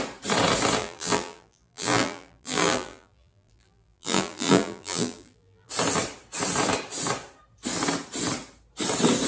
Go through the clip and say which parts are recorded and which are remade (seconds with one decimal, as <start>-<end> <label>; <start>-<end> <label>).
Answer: 0.0-0.8 recorded; 0.8-5.7 remade; 5.7-9.3 recorded